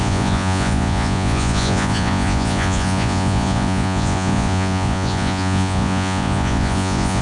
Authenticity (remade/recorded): remade